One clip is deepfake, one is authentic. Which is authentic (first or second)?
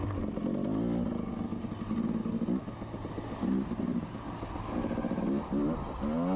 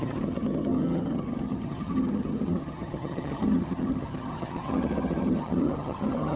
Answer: first